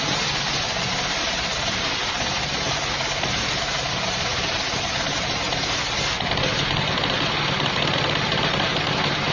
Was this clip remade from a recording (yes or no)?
no